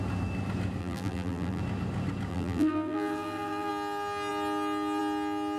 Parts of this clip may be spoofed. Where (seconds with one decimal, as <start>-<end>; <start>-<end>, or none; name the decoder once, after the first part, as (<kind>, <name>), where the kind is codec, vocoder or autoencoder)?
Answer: 0.8-1.6 (vocoder, BigVGAN v2); 2.3-3.7